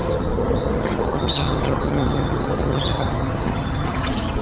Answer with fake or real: fake